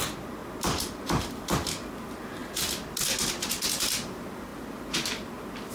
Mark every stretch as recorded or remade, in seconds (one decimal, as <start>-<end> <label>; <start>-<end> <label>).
0.0-5.7 recorded